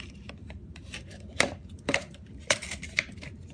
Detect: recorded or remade remade